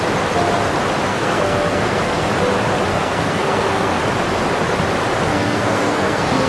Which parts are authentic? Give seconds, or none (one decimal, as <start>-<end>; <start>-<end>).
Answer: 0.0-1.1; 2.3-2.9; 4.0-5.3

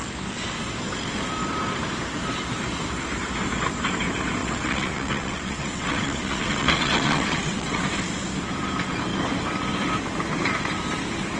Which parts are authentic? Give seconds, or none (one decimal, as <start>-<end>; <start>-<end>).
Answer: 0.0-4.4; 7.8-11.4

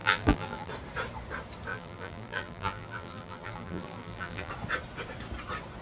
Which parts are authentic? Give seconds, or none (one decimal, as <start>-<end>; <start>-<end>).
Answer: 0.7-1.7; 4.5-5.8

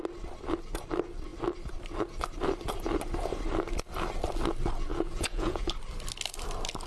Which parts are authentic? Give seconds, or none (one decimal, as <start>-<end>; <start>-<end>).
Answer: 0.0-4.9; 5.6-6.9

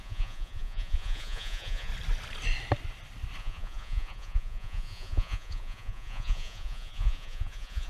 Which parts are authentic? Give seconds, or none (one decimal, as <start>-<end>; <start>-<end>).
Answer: 1.9-3.4